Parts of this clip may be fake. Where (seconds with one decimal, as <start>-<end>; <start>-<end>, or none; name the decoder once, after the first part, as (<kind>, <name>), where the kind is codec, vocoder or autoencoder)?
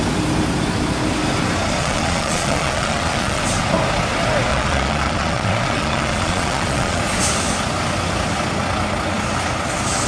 1.8-3.4 (vocoder, Vocos); 4.5-7.0